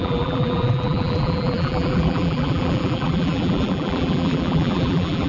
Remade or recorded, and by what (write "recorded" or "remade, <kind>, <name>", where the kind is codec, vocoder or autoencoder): remade, vocoder, BigVGAN v2